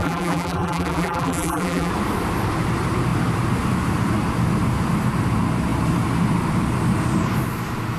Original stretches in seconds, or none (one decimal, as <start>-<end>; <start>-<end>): 1.9-8.0